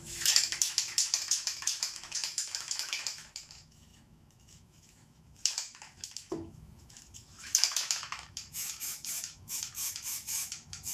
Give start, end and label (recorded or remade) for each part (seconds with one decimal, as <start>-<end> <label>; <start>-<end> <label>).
0.0-10.9 remade